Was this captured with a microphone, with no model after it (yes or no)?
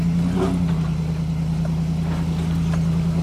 yes